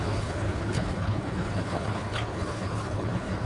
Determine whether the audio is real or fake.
fake